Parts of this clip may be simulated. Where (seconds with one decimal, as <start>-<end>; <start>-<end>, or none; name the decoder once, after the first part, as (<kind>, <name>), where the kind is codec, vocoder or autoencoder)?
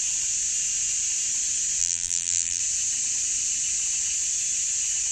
1.8-2.6 (vocoder, BigVGAN v2)